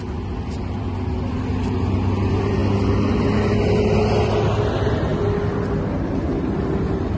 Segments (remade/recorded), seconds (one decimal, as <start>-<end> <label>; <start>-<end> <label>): 0.0-7.2 recorded